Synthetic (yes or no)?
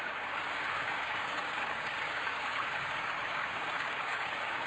yes